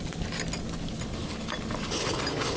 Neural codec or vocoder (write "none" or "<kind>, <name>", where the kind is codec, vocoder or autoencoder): none